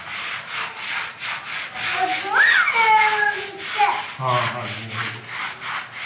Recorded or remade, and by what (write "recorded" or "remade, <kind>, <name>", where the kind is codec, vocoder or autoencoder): recorded